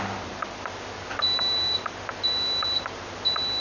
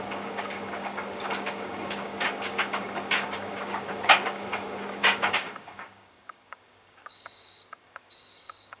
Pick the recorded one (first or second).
first